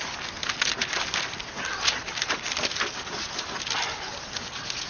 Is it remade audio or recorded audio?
recorded